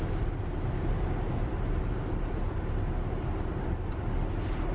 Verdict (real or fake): real